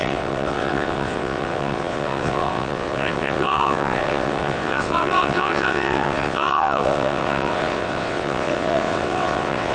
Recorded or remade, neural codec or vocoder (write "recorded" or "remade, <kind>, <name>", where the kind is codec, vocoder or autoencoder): remade, vocoder, WaveNeXt